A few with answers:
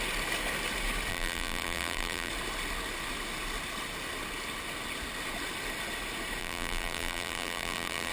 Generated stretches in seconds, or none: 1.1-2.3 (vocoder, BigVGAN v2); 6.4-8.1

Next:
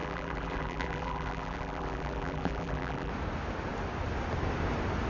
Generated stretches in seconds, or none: 0.0-3.1 (vocoder, BigVGAN v2)